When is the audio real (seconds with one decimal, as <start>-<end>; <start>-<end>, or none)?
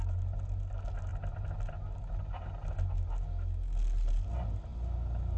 0.0-5.4